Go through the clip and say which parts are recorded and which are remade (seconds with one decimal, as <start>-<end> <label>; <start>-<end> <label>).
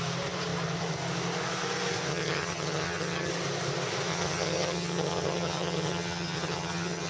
0.0-2.1 recorded; 2.1-3.3 remade; 3.3-4.1 recorded; 4.1-7.1 remade